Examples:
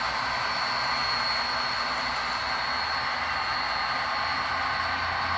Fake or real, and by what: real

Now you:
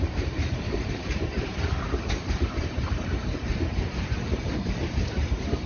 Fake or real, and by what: fake, vocoder, BigVGAN v2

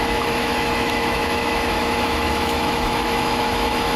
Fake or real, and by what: fake, autoencoder, DAC-VAE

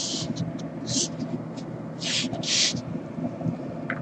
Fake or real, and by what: real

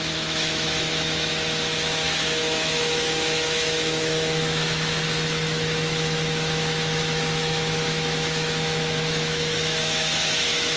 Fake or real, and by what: fake, autoencoder, DAC-VAE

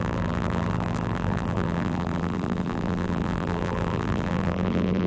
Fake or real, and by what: fake, vocoder, BigVGAN v2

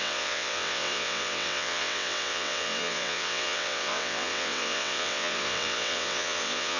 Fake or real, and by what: fake, vocoder, WaveNeXt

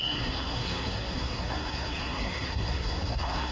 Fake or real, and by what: fake, codec, SNAC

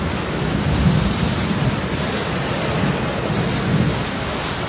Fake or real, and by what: real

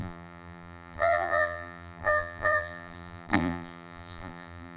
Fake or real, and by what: fake, vocoder, BigVGAN v2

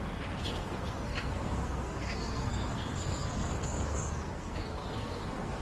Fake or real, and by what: fake, codec, SNAC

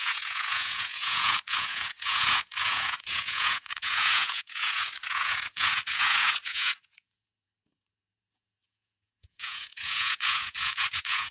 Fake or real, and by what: fake, vocoder, Vocos